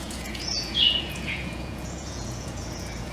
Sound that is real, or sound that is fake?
fake